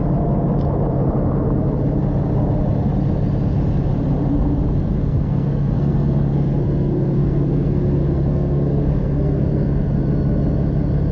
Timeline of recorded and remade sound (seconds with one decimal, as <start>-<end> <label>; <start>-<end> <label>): 0.0-5.0 recorded; 5.0-10.0 remade; 10.0-11.1 recorded